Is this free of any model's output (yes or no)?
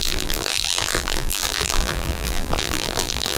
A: no